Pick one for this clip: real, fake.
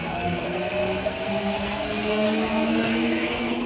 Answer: fake